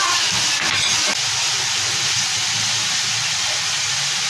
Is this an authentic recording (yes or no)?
yes